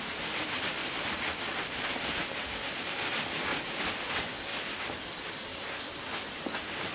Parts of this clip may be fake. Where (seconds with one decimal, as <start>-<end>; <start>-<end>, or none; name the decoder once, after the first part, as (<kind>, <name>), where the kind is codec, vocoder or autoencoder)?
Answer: 0.0-3.5 (vocoder, BigVGAN v2); 4.1-4.5; 5.1-6.9